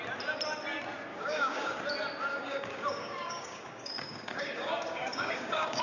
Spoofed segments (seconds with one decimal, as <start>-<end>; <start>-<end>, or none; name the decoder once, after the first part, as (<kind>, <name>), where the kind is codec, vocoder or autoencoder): 1.1-1.8 (codec, DAC); 2.3-5.8